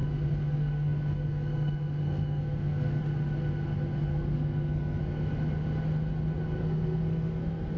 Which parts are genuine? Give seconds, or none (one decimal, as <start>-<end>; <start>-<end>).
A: 3.0-4.1; 5.0-6.6